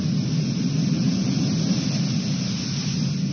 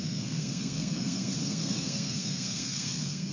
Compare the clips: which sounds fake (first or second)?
second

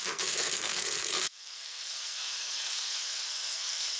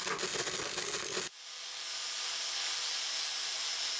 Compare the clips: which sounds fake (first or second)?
first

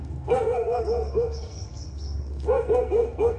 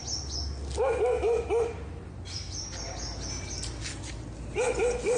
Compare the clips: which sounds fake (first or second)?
first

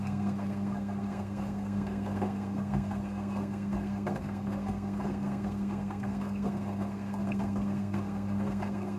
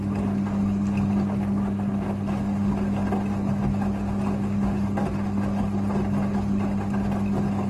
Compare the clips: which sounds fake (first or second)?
first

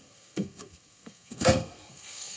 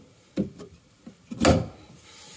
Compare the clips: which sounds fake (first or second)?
first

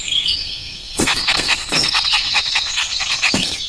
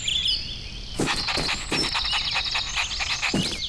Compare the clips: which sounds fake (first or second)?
first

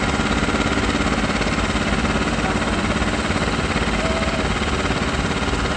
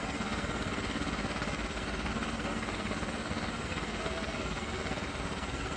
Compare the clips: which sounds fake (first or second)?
second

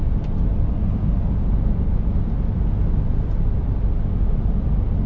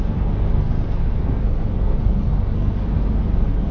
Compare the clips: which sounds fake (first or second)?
second